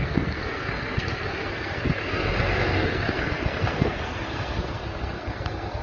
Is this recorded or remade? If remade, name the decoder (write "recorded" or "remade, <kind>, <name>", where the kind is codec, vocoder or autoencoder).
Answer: remade, codec, SNAC